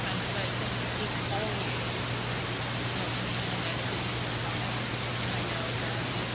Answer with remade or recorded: recorded